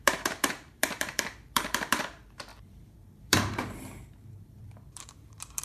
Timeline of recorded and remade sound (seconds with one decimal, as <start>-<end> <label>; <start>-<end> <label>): 0.0-5.6 remade